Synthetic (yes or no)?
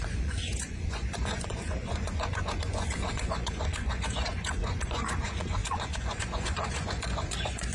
yes